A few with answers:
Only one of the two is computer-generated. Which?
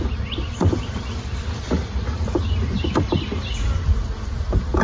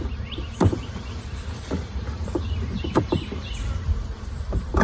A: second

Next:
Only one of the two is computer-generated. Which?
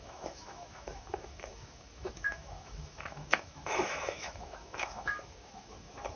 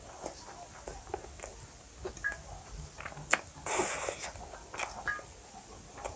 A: first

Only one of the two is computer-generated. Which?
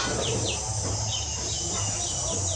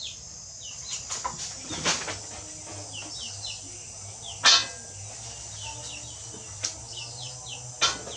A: first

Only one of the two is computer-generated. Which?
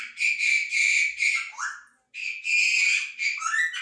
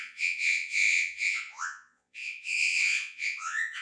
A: second